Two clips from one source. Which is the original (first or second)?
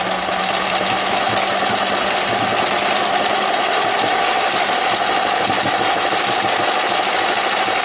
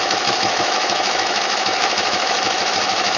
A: first